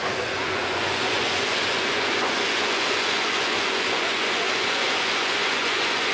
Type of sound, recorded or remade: remade